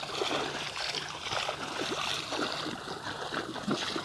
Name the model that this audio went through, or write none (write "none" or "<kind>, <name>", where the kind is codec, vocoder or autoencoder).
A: none